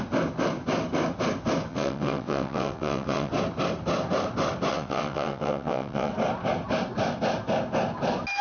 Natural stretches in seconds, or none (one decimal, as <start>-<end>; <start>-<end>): 0.0-1.7; 3.3-4.7; 6.1-8.4